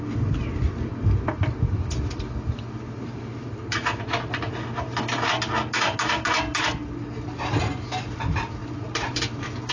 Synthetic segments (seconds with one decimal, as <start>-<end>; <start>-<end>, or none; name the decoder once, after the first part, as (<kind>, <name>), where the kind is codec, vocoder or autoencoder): 8.6-9.7 (vocoder, BigVGAN v2)